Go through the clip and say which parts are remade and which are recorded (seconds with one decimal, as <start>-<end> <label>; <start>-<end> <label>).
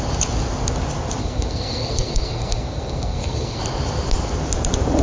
0.0-1.2 recorded; 1.2-3.6 remade; 3.6-5.0 recorded